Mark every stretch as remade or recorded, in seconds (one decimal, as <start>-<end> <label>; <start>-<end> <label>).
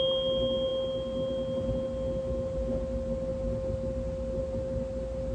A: 0.0-5.3 recorded